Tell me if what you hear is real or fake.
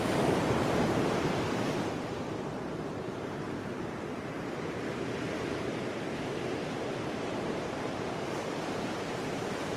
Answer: fake